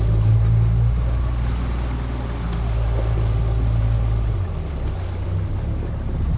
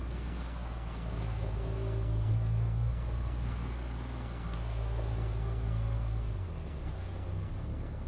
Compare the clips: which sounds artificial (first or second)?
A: second